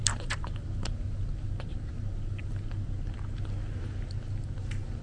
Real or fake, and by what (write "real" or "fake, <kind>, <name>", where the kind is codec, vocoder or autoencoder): real